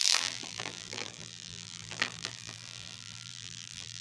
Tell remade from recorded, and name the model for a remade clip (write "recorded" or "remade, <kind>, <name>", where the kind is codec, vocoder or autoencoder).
remade, vocoder, BigVGAN v2